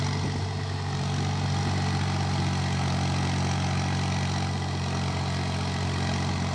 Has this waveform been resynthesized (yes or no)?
no